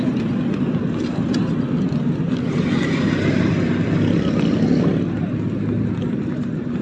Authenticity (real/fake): real